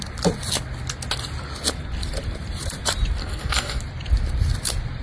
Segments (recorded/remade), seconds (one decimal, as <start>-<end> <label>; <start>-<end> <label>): 0.0-3.2 recorded; 3.2-3.8 remade; 3.8-5.0 recorded